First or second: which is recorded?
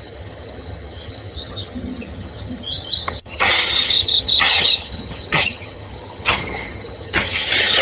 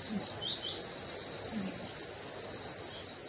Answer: second